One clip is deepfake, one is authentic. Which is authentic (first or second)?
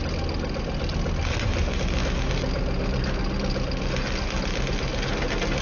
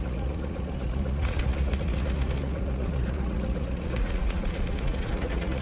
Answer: first